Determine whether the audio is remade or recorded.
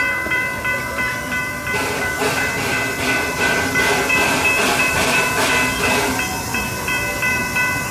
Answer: remade